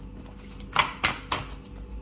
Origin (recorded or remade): recorded